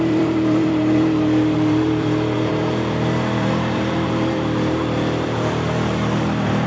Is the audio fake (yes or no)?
yes